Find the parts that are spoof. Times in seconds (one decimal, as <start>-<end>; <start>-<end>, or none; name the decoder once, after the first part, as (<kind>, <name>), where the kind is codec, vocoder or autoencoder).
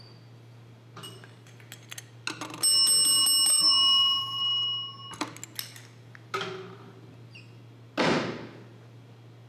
3.5-4.4 (autoencoder, DAC-VAE)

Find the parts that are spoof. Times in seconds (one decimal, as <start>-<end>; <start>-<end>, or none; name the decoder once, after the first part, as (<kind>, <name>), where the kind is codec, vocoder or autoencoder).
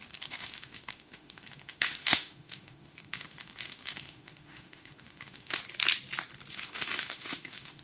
0.0-5.6 (autoencoder, DAC-VAE); 6.5-7.8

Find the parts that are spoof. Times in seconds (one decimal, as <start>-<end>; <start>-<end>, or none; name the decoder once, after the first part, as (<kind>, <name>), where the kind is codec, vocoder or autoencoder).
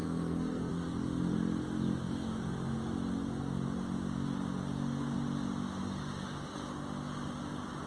0.0-0.7 (codec, SNAC)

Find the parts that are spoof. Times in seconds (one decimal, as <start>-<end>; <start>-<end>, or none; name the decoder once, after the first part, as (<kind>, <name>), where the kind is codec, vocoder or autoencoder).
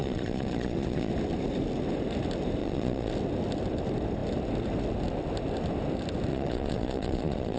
0.0-1.1 (vocoder, Vocos); 2.6-3.1; 6.3-7.6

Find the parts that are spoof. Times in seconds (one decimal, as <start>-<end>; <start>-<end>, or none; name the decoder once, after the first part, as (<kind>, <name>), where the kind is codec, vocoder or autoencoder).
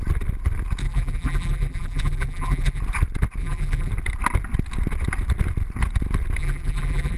0.8-2.8 (vocoder, BigVGAN v2); 3.4-3.9; 6.4-7.2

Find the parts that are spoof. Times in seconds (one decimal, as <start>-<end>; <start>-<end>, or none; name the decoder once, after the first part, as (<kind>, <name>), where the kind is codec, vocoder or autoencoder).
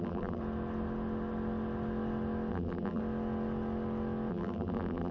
0.0-0.4 (vocoder, BigVGAN v2); 2.5-3.0; 4.3-5.1